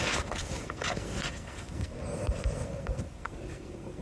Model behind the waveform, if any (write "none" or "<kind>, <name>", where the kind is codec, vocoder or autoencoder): codec, SNAC